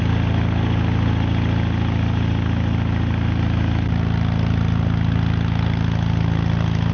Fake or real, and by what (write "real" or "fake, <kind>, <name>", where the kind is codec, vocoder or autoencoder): real